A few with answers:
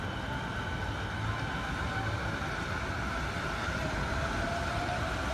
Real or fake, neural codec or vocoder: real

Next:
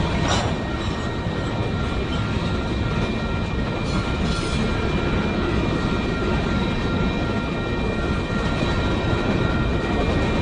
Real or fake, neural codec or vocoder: real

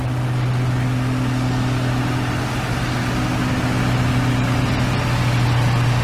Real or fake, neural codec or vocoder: real